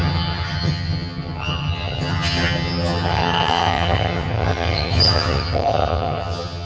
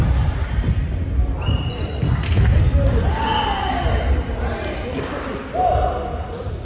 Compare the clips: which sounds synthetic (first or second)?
first